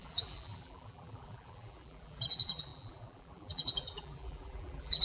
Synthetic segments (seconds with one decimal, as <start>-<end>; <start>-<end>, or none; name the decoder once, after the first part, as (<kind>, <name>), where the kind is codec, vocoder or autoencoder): 0.0-5.0 (vocoder, BigVGAN v2)